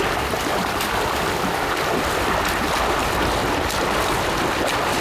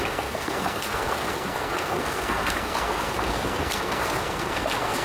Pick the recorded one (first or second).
first